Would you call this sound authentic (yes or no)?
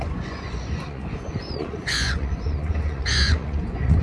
no